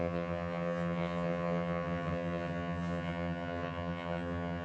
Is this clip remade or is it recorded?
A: remade